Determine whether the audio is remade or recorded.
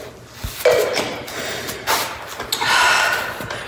recorded